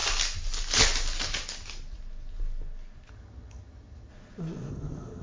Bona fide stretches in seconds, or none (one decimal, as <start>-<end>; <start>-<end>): 0.0-3.1; 4.1-4.7